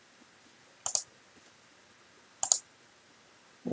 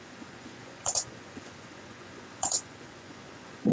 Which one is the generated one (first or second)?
second